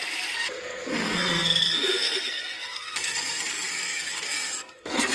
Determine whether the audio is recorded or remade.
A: remade